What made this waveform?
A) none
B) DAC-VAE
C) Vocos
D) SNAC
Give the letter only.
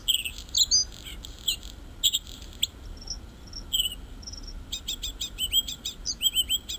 A